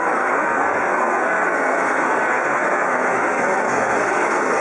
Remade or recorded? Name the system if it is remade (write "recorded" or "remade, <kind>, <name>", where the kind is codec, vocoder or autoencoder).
remade, codec, SNAC